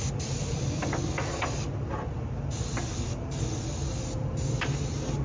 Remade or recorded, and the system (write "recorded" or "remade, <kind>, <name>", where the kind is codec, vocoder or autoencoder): recorded